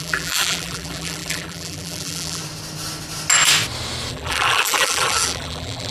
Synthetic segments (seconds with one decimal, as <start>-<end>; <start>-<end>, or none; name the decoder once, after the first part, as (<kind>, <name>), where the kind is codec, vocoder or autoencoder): 0.0-2.4 (vocoder, BigVGAN v2); 4.1-5.9

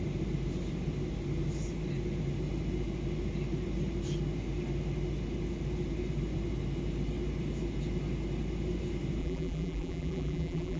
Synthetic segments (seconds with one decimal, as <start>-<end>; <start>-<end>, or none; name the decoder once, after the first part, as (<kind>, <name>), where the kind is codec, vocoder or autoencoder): 9.2-10.8 (vocoder, BigVGAN v2)